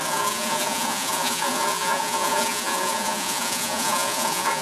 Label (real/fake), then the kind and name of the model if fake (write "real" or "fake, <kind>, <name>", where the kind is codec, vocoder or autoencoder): fake, vocoder, Vocos